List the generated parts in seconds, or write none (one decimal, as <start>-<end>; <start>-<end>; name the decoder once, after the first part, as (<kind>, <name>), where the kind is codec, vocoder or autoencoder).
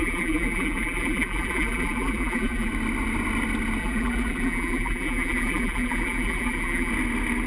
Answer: 0.0-2.7 (vocoder, BigVGAN v2); 3.8-6.9